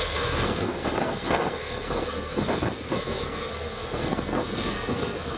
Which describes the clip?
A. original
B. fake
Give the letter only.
B